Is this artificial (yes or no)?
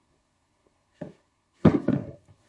yes